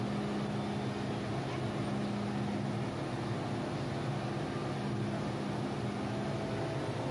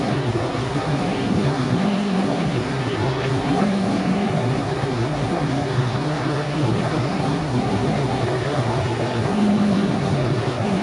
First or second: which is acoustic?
first